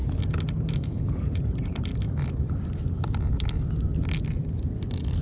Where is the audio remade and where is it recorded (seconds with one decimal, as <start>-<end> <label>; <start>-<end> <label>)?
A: 0.0-0.7 recorded; 0.7-1.9 remade; 1.9-5.2 recorded